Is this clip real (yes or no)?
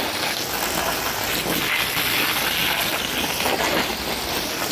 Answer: yes